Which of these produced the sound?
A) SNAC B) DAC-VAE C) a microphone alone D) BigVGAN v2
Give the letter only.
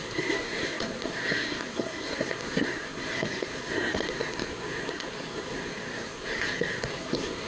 A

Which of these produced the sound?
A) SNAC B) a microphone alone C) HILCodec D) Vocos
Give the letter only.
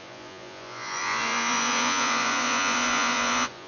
D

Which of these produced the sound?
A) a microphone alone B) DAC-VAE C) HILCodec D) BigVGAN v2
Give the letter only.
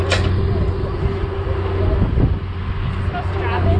A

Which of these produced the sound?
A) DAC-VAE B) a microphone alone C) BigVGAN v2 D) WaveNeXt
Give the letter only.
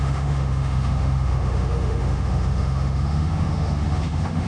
A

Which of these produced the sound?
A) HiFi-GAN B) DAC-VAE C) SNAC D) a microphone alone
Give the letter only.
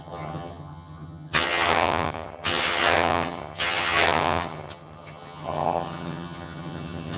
A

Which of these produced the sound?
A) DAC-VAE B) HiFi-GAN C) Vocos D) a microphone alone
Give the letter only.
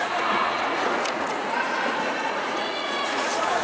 C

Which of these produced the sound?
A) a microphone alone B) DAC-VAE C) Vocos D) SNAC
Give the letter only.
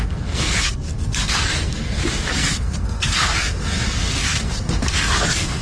D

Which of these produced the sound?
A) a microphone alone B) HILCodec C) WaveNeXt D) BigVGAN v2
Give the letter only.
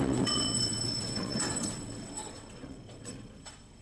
C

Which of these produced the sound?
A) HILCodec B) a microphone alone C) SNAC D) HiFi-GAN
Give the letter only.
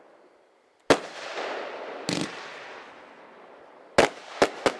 B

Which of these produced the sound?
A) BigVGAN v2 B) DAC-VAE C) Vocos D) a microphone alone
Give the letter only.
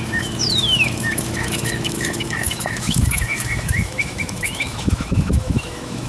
B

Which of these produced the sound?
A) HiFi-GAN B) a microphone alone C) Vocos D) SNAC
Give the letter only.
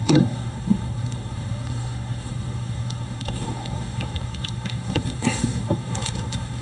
D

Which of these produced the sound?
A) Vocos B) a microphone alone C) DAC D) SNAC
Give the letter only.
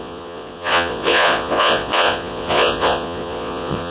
A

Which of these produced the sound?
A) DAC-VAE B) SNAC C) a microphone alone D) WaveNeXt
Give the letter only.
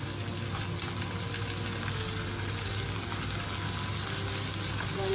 C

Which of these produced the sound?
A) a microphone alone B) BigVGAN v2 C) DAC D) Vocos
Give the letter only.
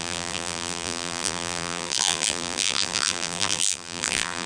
B